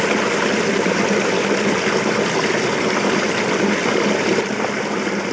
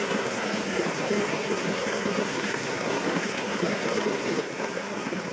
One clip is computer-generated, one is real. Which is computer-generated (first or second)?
second